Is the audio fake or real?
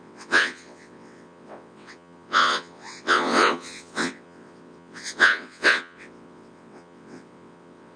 fake